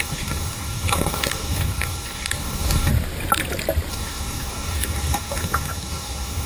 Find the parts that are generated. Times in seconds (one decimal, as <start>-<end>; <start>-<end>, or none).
0.0-2.9; 3.9-6.5